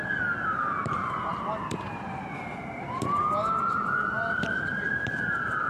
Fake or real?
fake